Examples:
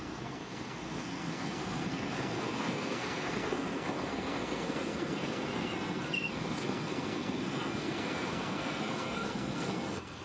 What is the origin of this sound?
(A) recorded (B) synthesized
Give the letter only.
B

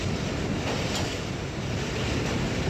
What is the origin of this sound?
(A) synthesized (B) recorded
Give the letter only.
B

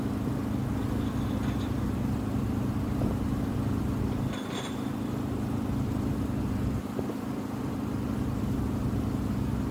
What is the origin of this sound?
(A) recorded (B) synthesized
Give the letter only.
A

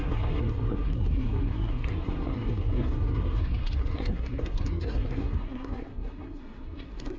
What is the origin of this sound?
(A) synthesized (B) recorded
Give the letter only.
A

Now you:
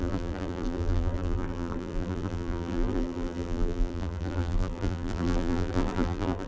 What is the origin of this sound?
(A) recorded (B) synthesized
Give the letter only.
B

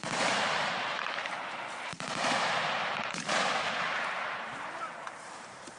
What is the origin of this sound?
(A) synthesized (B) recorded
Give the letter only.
A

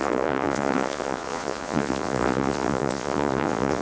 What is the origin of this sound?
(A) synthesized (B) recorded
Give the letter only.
A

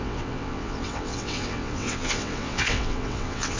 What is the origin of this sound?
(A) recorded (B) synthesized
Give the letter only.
B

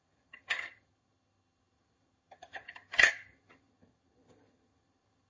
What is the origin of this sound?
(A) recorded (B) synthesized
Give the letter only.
B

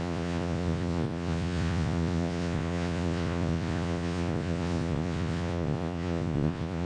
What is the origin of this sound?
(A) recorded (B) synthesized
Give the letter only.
B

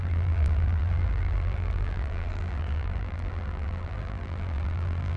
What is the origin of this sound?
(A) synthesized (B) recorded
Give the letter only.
A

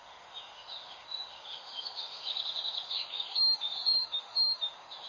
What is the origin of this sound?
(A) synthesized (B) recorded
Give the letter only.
A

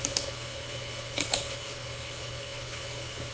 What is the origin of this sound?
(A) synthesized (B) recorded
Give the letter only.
A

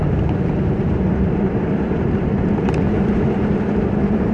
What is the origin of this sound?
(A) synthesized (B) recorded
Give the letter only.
A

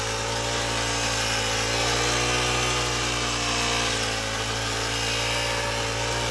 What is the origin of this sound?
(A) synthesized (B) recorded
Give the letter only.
B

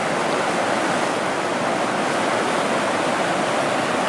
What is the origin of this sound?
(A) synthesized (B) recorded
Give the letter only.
B